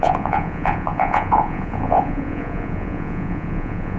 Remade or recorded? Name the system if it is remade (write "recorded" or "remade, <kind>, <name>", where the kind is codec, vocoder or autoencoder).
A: remade, vocoder, Vocos